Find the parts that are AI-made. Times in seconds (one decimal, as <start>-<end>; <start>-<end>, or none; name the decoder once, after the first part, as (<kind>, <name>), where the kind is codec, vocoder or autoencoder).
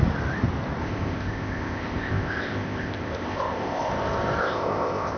0.8-3.9 (codec, ZipCodec); 4.4-5.2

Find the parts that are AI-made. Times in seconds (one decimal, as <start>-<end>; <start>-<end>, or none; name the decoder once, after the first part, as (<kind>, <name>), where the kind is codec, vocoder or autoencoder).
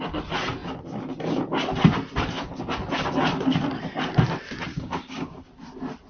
4.7-5.5 (codec, DAC)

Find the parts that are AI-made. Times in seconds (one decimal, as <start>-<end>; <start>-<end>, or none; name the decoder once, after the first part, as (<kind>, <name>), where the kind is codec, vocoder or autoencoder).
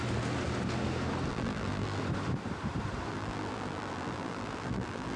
1.3-2.0 (vocoder, BigVGAN v2); 3.1-5.2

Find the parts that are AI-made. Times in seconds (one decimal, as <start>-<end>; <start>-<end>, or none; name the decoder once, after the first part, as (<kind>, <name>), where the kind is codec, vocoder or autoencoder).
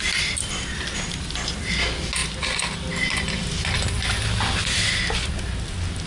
none